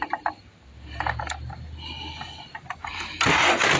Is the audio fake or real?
real